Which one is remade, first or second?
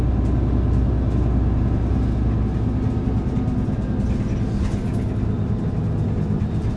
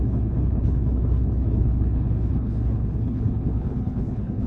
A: second